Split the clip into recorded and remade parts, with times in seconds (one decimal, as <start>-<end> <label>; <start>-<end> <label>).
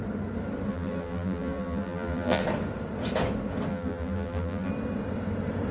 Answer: 0.0-0.7 recorded; 0.7-2.4 remade; 2.4-3.7 recorded; 3.7-4.7 remade; 4.7-5.7 recorded